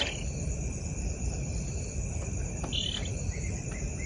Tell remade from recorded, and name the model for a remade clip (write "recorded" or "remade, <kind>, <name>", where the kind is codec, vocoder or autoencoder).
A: remade, vocoder, BigVGAN v2